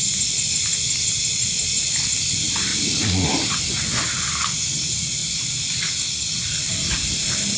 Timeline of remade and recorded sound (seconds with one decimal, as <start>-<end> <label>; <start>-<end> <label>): 0.0-2.7 recorded; 2.7-3.3 remade; 3.3-7.6 recorded